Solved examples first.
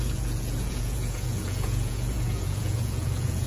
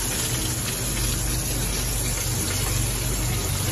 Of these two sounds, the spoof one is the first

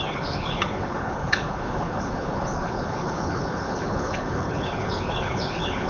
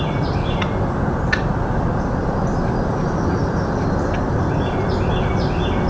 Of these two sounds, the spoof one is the first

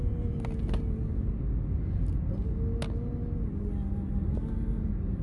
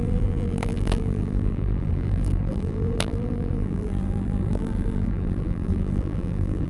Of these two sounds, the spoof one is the second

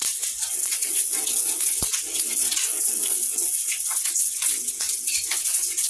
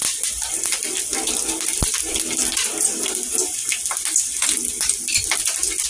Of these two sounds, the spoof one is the first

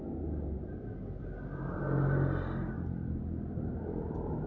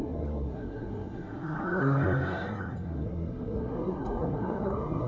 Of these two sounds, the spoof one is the second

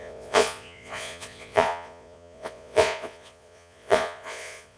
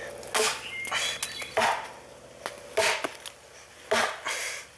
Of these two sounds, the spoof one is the first